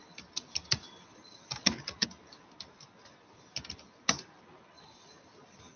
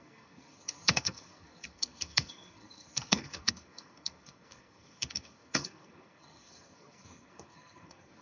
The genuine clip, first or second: first